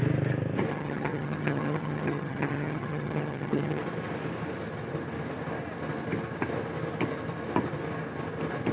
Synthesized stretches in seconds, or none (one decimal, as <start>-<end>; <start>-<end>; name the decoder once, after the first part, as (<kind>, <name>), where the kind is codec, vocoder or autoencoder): 0.7-3.8 (vocoder, HiFi-GAN)